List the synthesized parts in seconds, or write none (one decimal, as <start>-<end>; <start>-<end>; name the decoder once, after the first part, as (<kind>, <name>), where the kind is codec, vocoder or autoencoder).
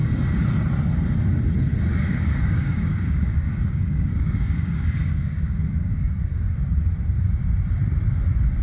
1.9-6.1 (codec, DAC)